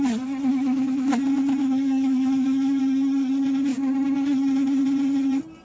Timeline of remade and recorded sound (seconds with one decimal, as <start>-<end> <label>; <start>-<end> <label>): 0.0-0.5 recorded; 0.5-1.1 remade; 1.1-1.6 recorded; 1.6-2.8 remade; 2.8-5.6 recorded